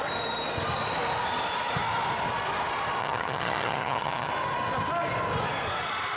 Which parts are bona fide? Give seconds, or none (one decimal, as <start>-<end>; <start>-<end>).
0.0-3.0; 4.3-6.2